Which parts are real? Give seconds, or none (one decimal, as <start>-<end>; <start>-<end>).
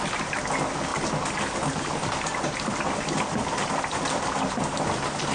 0.0-5.3